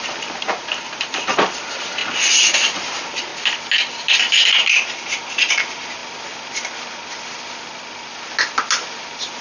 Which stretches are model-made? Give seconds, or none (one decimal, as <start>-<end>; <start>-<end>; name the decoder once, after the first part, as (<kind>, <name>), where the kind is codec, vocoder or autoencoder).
0.0-2.0 (vocoder, BigVGAN v2); 2.8-3.3; 5.5-6.0